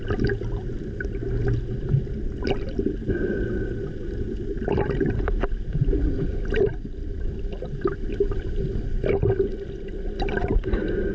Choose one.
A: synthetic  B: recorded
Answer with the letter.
B